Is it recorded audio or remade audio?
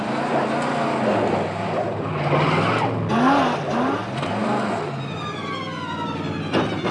recorded